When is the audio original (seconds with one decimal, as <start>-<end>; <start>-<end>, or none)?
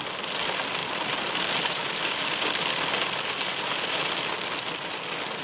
0.0-5.4